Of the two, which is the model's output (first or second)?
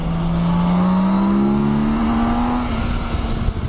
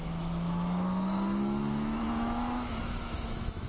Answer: second